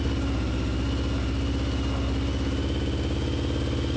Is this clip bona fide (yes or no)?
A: yes